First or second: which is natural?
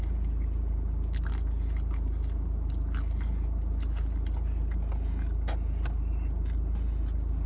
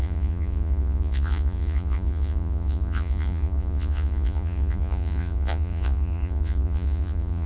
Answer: first